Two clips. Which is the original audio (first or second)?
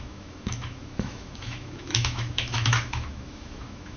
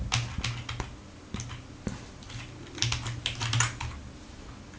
second